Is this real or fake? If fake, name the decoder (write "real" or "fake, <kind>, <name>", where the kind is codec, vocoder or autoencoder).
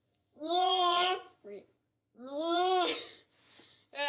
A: fake, vocoder, Vocos